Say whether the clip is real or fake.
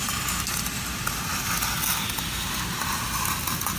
real